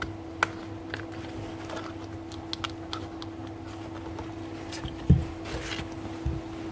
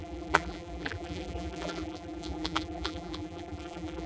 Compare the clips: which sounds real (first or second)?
first